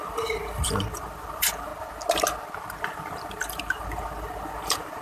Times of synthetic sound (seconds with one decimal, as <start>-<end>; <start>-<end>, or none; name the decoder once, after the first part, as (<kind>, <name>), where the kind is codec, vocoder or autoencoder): 0.0-1.7 (vocoder, BigVGAN v2); 2.8-5.0